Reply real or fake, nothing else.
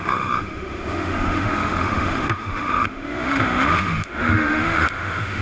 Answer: fake